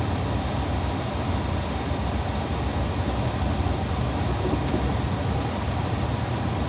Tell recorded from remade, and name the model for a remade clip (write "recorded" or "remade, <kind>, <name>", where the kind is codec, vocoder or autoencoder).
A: recorded